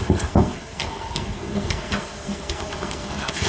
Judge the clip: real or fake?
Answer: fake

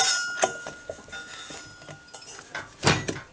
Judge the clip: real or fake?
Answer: real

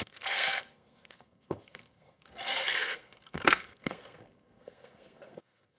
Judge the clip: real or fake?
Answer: fake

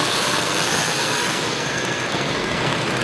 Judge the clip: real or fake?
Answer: fake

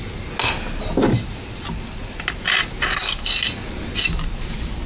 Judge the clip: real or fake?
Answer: real